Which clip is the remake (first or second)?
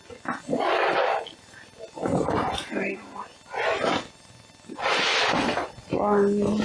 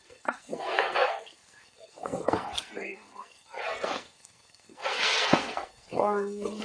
second